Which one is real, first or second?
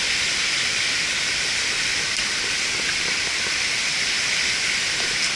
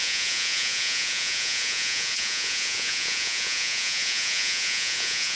first